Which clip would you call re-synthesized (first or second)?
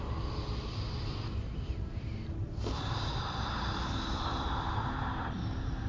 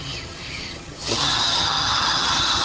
second